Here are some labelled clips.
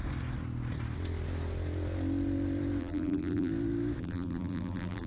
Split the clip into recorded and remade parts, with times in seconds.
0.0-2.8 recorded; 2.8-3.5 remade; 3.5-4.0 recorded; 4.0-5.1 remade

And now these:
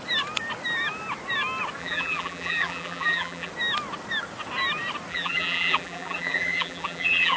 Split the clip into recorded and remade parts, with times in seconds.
0.0-1.8 recorded; 1.8-3.5 remade; 3.5-5.1 recorded; 5.1-7.4 remade

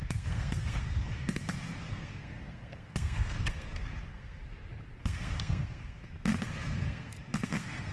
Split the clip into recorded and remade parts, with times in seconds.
0.0-4.4 remade; 4.4-5.0 recorded; 5.0-7.9 remade

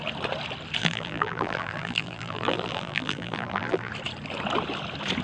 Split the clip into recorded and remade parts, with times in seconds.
0.0-0.8 recorded; 0.8-3.9 remade; 3.9-5.2 recorded

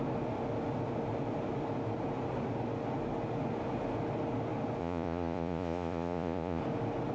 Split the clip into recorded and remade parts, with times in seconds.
0.0-4.8 recorded; 4.8-6.6 remade; 6.6-7.1 recorded